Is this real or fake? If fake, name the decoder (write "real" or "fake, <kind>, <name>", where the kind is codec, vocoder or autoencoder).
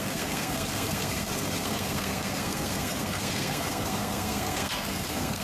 fake, codec, SNAC